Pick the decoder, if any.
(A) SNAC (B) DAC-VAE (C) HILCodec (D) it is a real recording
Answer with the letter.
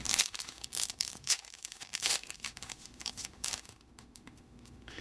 B